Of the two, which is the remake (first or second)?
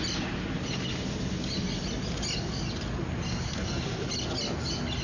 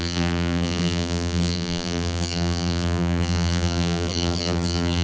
second